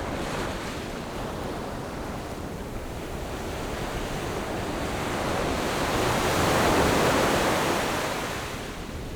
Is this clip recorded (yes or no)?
no